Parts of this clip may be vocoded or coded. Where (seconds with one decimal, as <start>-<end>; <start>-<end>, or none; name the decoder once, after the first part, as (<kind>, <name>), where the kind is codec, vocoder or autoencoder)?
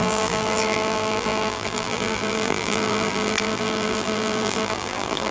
0.0-5.3 (vocoder, BigVGAN v2)